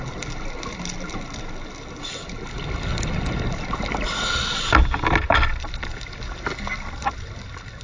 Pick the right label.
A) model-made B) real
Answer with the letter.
B